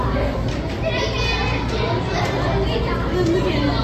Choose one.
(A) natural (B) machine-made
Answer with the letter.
A